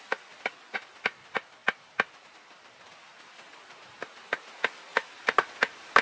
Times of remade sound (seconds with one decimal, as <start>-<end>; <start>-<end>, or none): none